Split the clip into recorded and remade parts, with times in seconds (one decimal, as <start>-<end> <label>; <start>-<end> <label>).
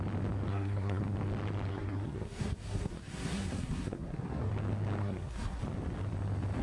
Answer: 0.0-0.5 recorded; 0.5-1.0 remade; 1.0-1.7 recorded; 1.7-4.5 remade; 4.5-5.0 recorded; 5.0-5.6 remade; 5.6-6.6 recorded